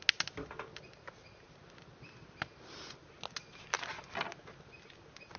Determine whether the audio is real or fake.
real